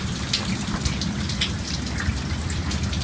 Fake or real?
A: real